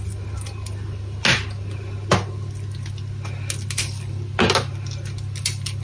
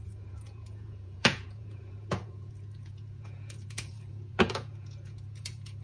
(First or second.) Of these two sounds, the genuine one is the first